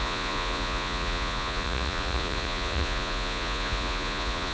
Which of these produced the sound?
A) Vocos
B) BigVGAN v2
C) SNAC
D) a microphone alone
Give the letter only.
A